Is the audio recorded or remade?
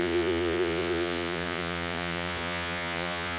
remade